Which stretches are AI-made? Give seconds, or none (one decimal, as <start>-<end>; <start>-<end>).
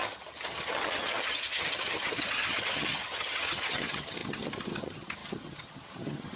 0.0-6.4